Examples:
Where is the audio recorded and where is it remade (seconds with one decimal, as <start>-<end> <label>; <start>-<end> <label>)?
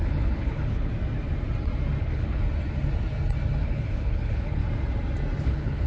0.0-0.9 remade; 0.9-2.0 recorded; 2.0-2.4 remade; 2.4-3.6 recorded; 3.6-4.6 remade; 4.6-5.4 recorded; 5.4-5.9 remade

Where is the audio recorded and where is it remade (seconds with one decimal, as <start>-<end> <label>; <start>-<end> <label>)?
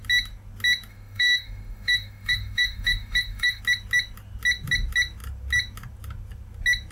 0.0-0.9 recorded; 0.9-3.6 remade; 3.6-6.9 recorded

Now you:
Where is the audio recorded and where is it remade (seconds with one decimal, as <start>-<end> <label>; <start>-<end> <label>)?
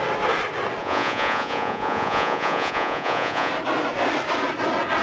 0.0-0.8 recorded; 0.8-3.5 remade; 3.5-5.0 recorded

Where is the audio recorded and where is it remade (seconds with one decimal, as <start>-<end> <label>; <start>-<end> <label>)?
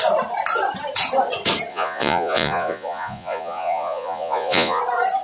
0.0-1.7 recorded; 1.7-4.8 remade; 4.8-5.2 recorded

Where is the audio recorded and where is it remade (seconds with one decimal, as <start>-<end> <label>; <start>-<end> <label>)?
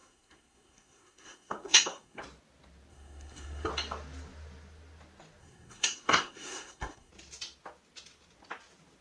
0.0-2.2 remade; 2.2-2.9 recorded; 2.9-3.7 remade; 3.7-5.4 recorded; 5.4-7.1 remade; 7.1-9.0 recorded